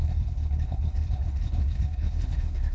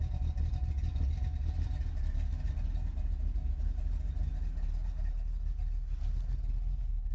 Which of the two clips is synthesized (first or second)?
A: first